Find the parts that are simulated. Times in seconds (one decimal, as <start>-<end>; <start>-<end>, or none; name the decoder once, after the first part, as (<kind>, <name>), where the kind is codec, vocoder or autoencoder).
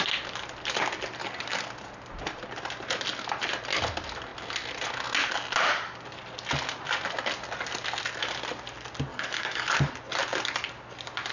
1.2-1.7 (codec, DAC); 9.1-9.9